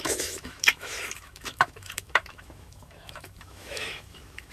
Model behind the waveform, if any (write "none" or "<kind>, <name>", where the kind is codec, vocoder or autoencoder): autoencoder, DAC-VAE